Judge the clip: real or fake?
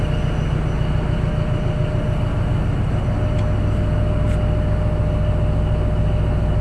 real